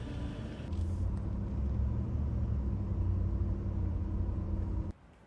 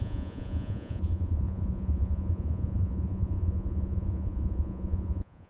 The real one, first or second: first